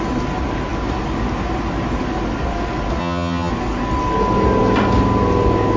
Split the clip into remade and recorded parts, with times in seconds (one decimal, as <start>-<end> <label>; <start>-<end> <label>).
0.0-3.0 recorded; 3.0-3.5 remade; 3.5-5.8 recorded